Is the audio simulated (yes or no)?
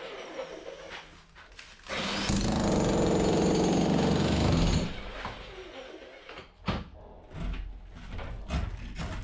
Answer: no